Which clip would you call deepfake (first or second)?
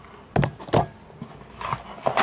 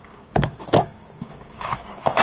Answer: second